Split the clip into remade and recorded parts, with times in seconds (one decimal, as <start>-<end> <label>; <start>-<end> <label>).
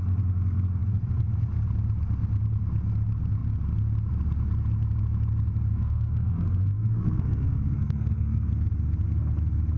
0.0-5.7 recorded; 5.7-8.5 remade; 8.5-9.8 recorded